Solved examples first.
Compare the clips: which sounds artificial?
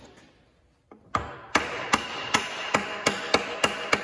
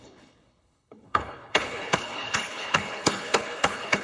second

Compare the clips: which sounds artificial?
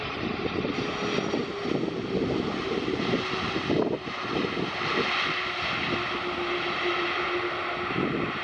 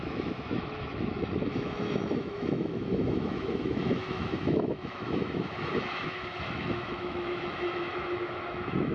second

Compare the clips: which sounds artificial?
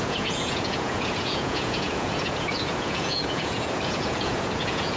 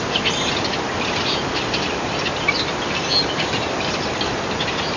first